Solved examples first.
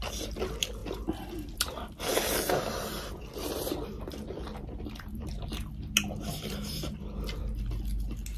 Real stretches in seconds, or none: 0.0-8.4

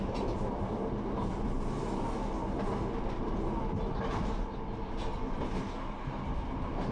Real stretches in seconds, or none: 0.0-6.9

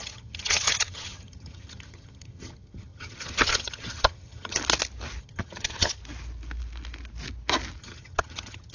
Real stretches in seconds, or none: 4.6-5.2; 6.0-7.8

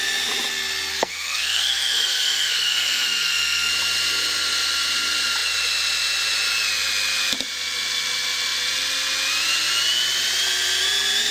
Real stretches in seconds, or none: 0.0-0.9; 3.7-11.3

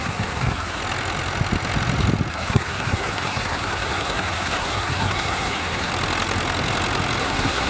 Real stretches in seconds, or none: 0.8-2.3; 5.9-7.2

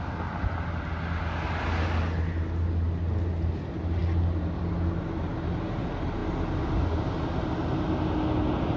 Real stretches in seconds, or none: 0.0-8.8

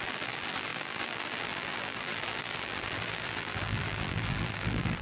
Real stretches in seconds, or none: none

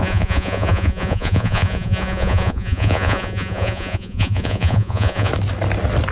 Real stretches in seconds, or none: 5.3-6.1